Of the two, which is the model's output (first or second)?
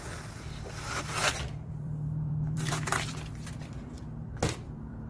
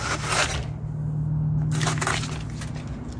first